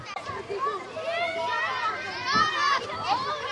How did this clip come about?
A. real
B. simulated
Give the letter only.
A